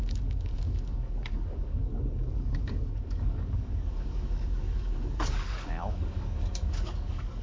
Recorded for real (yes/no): no